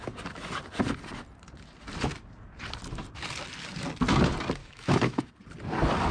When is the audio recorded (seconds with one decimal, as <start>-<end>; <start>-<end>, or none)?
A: 0.0-4.6; 5.3-6.1